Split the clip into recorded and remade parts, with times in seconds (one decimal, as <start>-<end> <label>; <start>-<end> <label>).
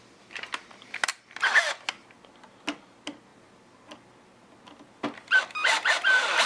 0.0-6.5 recorded